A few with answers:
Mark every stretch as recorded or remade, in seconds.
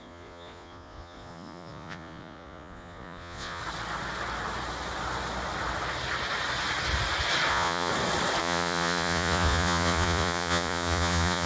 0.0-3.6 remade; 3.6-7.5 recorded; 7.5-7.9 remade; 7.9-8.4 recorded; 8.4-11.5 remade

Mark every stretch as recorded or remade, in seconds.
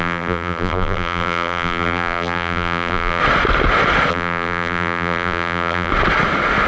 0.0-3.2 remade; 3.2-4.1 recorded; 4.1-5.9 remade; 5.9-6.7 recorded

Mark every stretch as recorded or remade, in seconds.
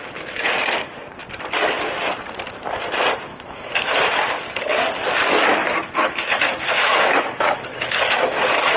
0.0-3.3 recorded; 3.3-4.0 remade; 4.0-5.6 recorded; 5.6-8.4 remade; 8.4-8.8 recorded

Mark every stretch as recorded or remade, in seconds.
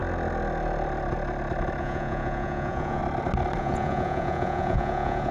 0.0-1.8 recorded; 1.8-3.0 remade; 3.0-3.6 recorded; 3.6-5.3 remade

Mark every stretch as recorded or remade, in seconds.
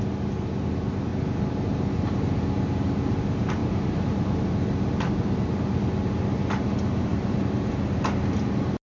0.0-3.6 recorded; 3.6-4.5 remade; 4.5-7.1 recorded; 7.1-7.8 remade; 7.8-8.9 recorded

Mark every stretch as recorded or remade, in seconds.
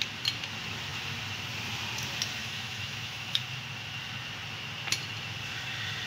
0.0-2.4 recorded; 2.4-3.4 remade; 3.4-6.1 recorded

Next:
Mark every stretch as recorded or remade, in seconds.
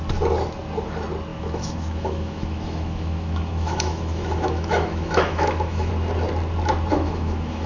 0.0-1.3 recorded; 1.3-5.9 remade; 5.9-6.9 recorded; 6.9-7.7 remade